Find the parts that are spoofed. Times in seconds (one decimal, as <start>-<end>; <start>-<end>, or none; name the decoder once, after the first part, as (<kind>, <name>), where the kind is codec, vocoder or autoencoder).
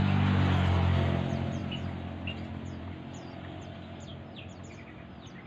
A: none